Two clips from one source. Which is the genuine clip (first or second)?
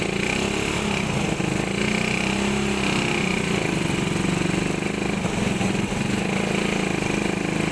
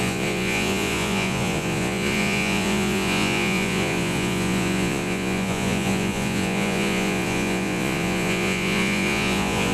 first